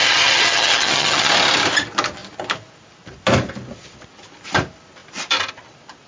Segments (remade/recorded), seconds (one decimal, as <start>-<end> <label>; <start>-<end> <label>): 0.0-1.3 remade; 1.3-6.1 recorded

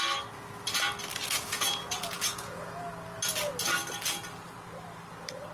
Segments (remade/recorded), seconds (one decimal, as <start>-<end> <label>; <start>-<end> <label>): 0.0-1.1 recorded; 1.1-2.8 remade; 2.8-5.5 recorded

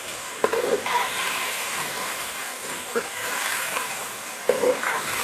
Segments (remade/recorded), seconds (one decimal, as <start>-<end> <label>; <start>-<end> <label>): 0.0-5.2 remade

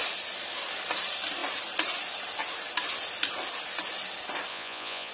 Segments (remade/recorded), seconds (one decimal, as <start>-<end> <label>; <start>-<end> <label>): 0.0-4.5 recorded; 4.5-5.1 remade

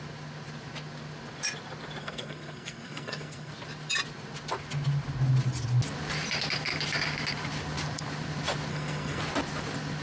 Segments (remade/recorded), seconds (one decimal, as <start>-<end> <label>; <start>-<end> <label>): 0.0-2.0 recorded; 2.0-3.5 remade; 3.5-8.7 recorded; 8.7-9.2 remade; 9.2-10.0 recorded